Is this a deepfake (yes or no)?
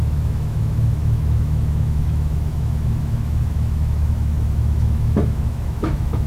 yes